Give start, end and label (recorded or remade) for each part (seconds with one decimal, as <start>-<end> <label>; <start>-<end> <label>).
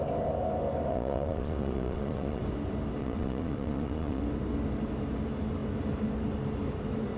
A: 0.0-0.9 recorded; 0.9-2.4 remade; 2.4-3.0 recorded; 3.0-4.2 remade; 4.2-7.2 recorded